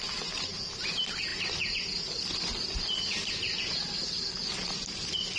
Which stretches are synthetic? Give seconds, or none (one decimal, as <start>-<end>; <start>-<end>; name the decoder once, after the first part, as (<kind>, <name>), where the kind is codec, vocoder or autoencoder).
none